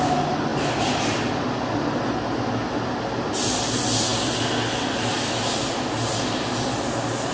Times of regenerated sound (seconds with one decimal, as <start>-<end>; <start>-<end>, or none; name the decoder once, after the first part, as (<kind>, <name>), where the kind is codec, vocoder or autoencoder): none